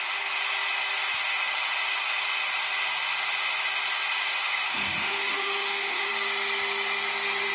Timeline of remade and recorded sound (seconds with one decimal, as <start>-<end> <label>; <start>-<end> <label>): 0.0-4.7 recorded; 4.7-6.1 remade; 6.1-7.5 recorded